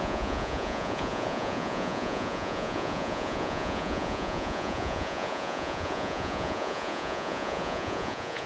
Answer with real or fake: fake